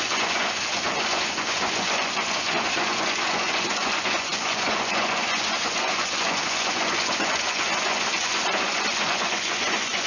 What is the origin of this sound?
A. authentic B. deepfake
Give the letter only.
B